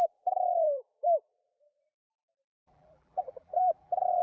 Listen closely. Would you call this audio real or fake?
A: fake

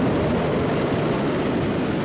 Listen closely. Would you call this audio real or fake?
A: real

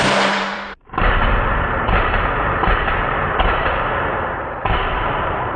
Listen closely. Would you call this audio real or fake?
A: fake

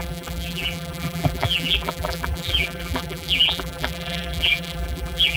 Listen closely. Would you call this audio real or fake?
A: fake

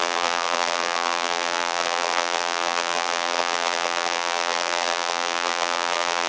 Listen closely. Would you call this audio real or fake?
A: fake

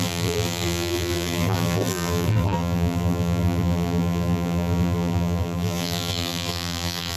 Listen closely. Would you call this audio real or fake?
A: fake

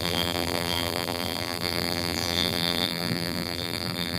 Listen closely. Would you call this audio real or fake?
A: fake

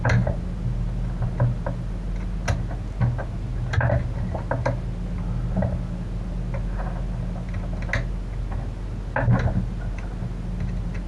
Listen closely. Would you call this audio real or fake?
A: real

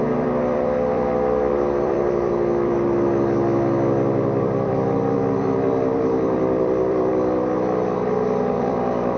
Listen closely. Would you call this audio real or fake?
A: fake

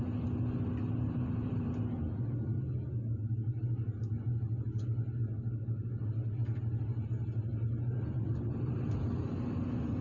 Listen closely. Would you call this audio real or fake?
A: real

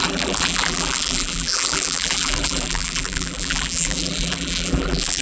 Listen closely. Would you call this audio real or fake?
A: fake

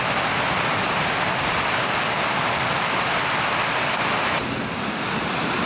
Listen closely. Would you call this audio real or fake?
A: real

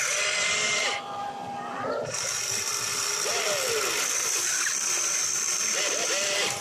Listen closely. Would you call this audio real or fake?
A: fake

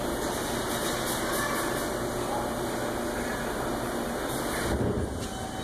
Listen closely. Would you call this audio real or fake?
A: real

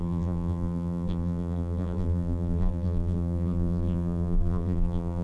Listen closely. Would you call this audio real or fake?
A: fake